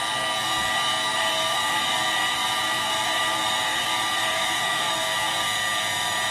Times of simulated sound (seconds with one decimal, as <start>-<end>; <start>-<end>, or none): 1.1-4.9

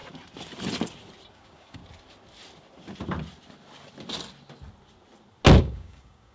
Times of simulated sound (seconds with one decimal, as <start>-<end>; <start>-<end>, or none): 1.3-1.8; 5.6-6.3